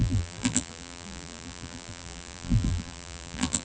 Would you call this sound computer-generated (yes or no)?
yes